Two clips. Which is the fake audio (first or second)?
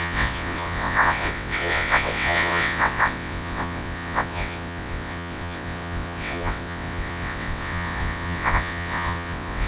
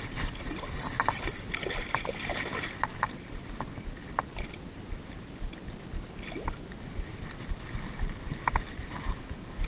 first